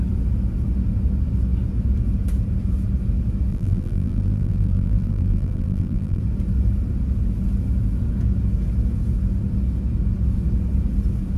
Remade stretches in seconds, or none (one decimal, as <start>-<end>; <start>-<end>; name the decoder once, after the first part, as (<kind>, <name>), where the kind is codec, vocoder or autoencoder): 3.5-6.2 (vocoder, BigVGAN v2)